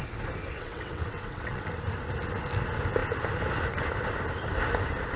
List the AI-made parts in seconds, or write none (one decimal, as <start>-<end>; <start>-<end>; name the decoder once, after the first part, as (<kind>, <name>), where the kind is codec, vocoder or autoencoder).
0.5-1.7 (vocoder, WaveNeXt)